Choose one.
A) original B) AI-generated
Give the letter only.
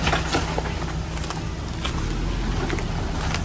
A